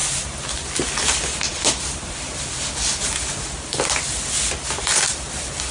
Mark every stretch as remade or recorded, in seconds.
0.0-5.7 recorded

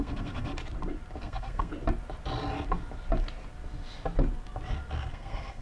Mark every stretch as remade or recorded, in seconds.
0.0-0.5 remade; 0.5-1.2 recorded; 1.2-1.7 remade; 1.7-5.1 recorded; 5.1-5.6 remade

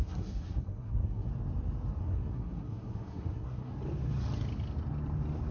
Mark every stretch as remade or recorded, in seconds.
0.0-1.3 remade; 1.3-2.0 recorded; 2.0-3.7 remade; 3.7-5.5 recorded

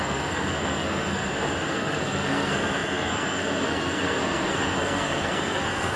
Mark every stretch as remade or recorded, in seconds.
0.0-1.2 remade; 1.2-1.7 recorded; 1.7-6.0 remade

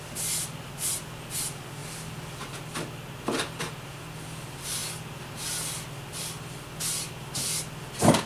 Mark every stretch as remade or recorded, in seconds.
0.0-8.3 recorded